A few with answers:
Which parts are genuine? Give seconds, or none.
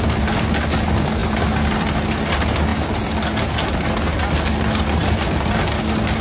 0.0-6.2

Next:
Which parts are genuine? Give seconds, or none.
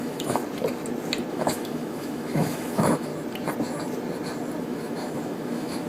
0.4-1.3; 3.1-4.6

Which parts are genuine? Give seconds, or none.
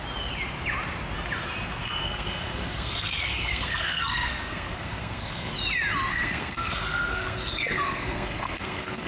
0.0-1.8; 5.5-6.1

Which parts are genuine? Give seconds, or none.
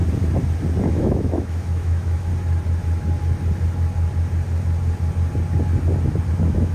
0.0-0.9; 2.3-6.3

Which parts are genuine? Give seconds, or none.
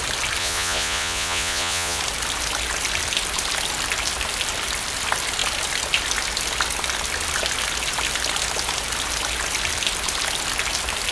0.0-0.4; 2.0-11.1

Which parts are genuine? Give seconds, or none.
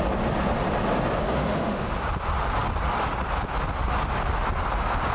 0.0-1.2; 1.9-5.1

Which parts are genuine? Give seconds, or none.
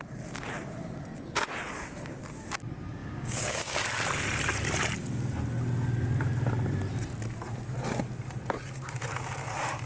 0.0-3.0; 3.8-9.9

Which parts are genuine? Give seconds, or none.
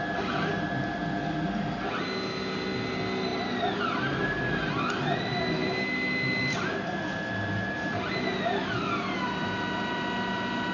0.0-10.7